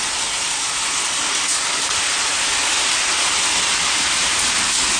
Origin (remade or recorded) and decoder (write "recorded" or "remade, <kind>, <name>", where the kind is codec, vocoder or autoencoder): recorded